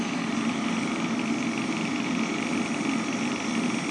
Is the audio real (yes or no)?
yes